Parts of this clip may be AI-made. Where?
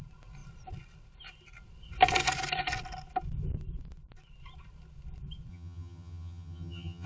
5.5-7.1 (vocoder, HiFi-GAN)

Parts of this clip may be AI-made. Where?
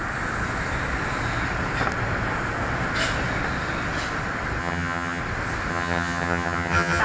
4.6-5.2 (vocoder, HiFi-GAN); 5.7-7.0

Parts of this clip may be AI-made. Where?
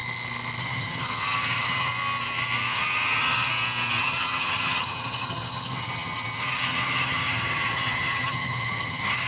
0.6-1.9 (vocoder, HiFi-GAN); 2.7-3.5; 4.0-9.3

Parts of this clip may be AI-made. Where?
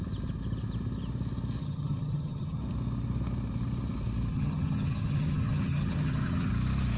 1.6-2.6 (vocoder, HiFi-GAN); 4.3-6.5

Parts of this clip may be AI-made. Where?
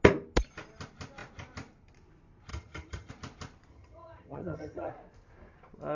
2.5-3.1 (vocoder, HiFi-GAN); 3.7-4.9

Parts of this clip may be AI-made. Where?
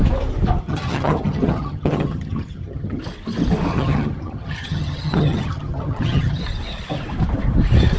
0.6-3.0 (vocoder, HiFi-GAN); 3.7-6.4